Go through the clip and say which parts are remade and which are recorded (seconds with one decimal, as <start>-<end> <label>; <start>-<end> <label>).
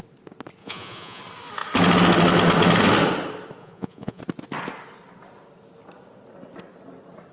0.0-0.6 recorded; 0.6-1.2 remade; 1.2-3.6 recorded; 3.6-4.2 remade; 4.2-7.3 recorded